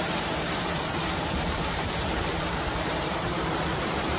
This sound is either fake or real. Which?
fake